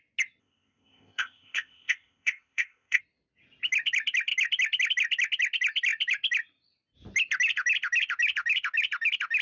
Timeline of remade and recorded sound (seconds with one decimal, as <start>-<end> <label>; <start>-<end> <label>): 0.0-0.4 recorded; 0.4-3.0 remade; 3.0-9.4 recorded